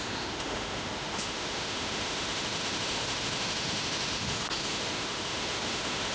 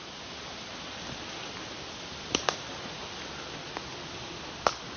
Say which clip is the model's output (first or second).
first